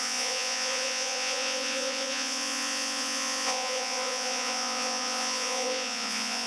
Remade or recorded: remade